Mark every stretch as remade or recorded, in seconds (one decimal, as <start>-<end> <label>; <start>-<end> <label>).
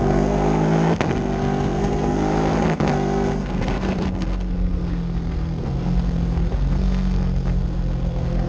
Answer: 0.0-8.5 remade